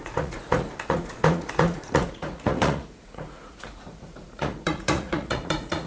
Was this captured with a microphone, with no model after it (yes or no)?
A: no